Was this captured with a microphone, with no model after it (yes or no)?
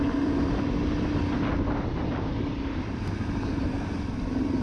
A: yes